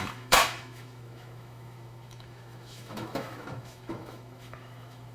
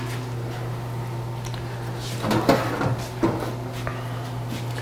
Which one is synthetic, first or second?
first